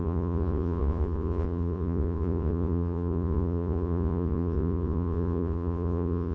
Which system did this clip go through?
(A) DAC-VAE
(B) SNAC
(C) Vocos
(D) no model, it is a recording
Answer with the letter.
C